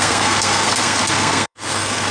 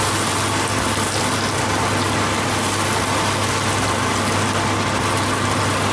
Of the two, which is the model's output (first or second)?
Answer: first